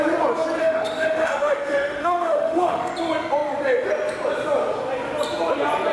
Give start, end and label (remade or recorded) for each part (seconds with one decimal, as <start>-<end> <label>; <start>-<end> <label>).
0.0-0.6 recorded; 0.6-2.9 remade; 2.9-5.9 recorded